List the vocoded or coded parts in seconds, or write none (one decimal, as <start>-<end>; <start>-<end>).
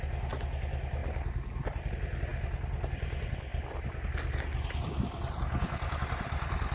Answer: none